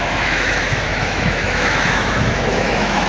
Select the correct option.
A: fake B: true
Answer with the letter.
A